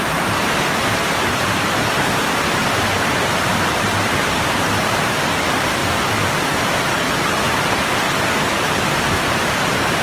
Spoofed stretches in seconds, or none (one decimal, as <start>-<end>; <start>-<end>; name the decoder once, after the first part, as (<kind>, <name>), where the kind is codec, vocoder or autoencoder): 0.0-5.8 (vocoder, BigVGAN v2); 8.5-10.0